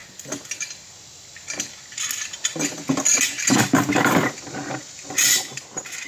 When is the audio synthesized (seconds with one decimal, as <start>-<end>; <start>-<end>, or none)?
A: none